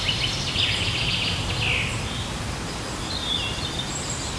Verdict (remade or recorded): recorded